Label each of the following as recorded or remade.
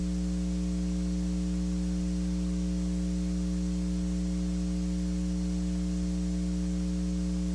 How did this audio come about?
recorded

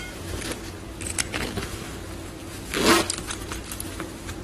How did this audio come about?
recorded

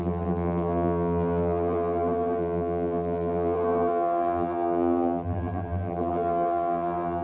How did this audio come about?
remade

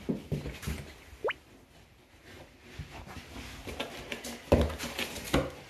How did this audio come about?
recorded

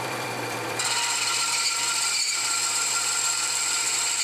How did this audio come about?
remade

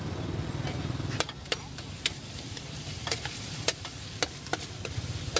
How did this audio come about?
recorded